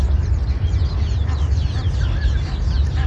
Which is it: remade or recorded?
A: recorded